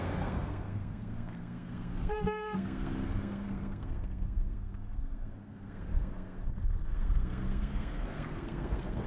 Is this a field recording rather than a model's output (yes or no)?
no